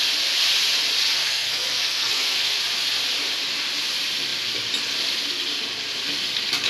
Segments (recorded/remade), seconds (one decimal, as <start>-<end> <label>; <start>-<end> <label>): 0.0-1.2 recorded; 1.2-2.6 remade; 2.6-6.7 recorded